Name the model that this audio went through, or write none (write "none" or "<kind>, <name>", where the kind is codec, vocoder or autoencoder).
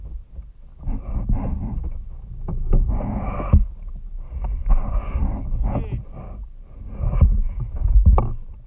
none